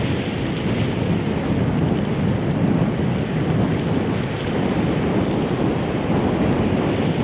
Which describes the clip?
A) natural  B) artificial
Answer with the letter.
A